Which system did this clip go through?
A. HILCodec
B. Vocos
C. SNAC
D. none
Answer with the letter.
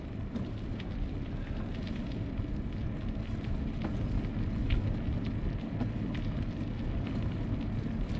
D